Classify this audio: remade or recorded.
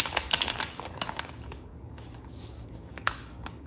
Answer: remade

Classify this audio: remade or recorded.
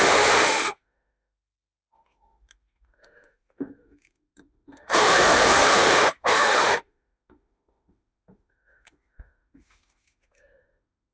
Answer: remade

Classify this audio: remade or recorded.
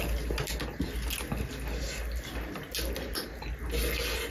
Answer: recorded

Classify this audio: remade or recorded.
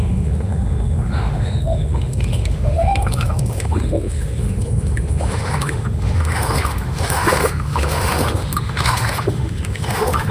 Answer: remade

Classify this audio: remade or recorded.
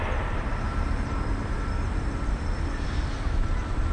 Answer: remade